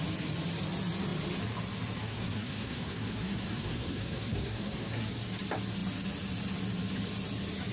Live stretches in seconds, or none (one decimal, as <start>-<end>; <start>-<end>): 0.0-2.0; 5.1-7.7